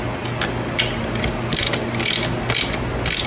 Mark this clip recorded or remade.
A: recorded